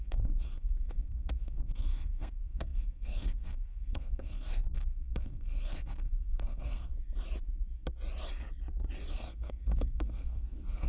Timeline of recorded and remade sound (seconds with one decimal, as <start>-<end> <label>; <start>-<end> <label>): 0.0-6.9 remade; 6.9-9.1 recorded; 9.1-10.9 remade